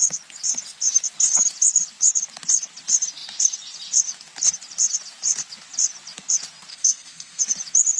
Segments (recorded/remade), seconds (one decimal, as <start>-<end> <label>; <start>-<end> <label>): 0.0-6.7 recorded; 6.7-7.4 remade; 7.4-8.0 recorded